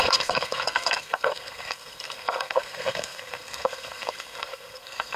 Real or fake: fake